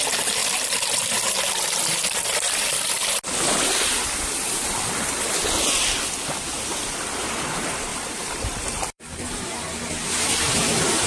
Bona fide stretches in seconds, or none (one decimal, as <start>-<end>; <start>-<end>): 0.0-0.4; 1.1-7.9; 9.8-11.1